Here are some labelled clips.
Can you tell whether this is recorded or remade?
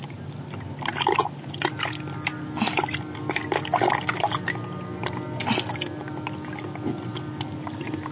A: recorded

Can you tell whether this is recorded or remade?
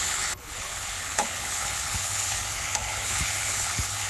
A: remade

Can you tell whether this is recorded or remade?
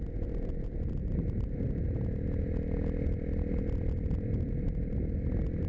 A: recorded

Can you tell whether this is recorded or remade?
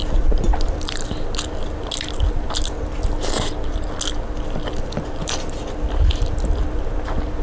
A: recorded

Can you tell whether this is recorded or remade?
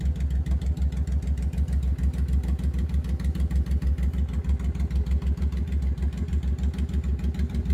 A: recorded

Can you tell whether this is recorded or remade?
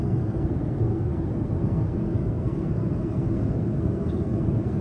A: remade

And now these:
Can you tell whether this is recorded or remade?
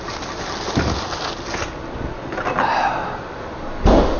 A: recorded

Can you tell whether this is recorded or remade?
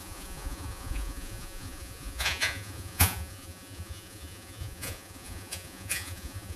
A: remade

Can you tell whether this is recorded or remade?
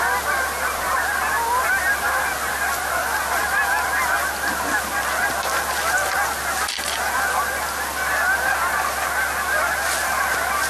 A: recorded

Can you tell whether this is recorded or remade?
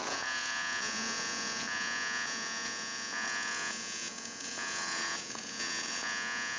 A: remade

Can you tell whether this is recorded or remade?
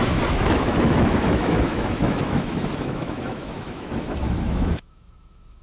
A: remade